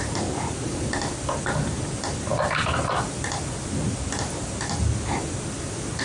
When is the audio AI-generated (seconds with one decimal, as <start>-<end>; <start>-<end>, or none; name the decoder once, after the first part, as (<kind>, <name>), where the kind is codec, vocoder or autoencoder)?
none